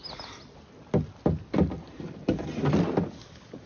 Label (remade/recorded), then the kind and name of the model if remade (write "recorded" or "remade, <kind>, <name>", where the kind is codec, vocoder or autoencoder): recorded